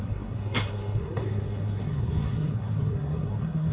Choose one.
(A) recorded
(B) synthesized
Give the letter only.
B